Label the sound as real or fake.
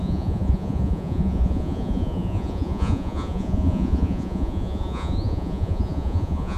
fake